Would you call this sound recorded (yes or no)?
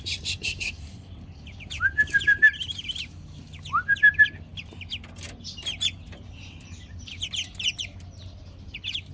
yes